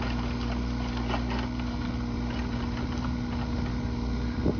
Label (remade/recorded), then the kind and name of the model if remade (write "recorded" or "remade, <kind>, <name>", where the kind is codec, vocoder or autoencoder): recorded